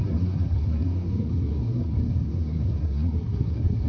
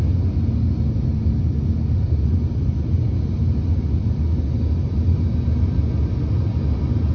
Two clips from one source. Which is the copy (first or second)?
first